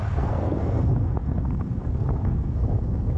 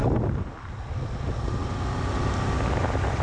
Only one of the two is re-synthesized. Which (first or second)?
first